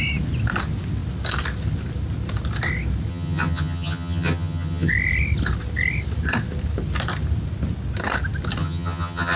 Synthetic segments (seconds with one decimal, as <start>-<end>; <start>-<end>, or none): 3.1-4.9; 8.6-9.4